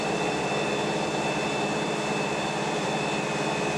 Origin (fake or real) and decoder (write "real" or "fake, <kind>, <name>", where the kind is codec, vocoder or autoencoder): fake, vocoder, BigVGAN v2